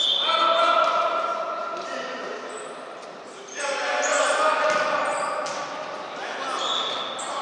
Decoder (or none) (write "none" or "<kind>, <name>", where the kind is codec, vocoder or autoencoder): none